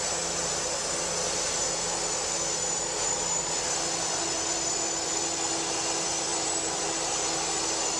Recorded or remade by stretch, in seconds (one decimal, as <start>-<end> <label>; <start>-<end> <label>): 0.0-6.3 recorded; 6.3-6.8 remade; 6.8-8.0 recorded